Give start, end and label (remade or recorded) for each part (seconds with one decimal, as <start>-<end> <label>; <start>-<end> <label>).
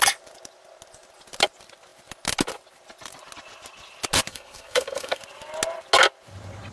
0.0-4.3 recorded; 4.3-5.2 remade; 5.2-6.7 recorded